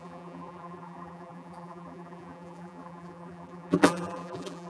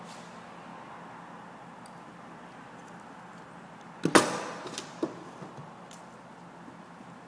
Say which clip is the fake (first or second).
first